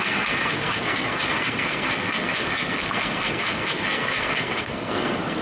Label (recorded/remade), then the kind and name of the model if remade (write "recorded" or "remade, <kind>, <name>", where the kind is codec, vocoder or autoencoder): remade, codec, SNAC